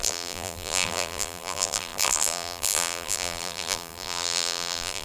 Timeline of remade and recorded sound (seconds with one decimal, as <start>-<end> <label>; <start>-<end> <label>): 0.0-5.0 remade